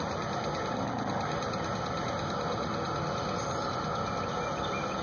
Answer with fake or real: real